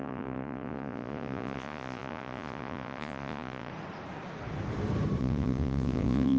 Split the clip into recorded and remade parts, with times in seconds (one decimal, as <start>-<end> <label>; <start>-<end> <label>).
0.0-3.7 remade; 3.7-5.2 recorded; 5.2-6.4 remade